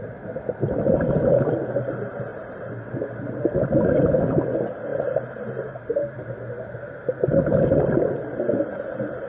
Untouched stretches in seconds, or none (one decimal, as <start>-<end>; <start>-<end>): 0.0-9.3